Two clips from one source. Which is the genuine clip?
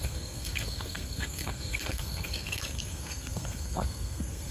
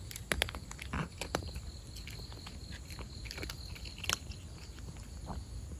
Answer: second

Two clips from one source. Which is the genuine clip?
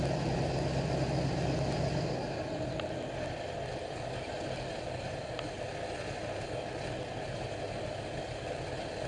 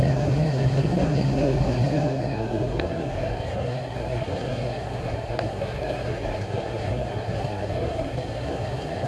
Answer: first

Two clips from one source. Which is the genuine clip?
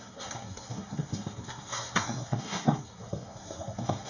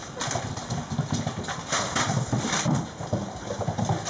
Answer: second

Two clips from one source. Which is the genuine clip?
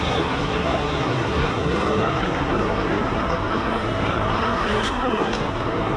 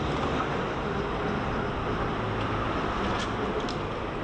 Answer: second